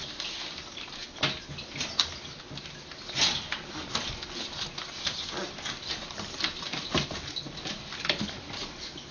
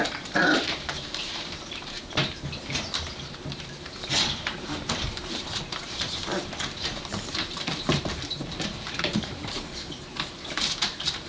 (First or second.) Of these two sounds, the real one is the first